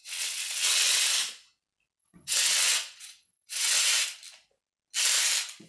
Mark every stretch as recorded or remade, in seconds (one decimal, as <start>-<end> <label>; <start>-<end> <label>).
0.0-1.1 remade; 1.1-2.0 recorded; 2.0-3.8 remade; 3.8-5.7 recorded